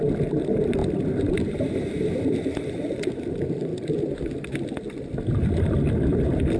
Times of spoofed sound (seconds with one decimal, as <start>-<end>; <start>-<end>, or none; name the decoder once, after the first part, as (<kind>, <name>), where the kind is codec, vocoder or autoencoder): none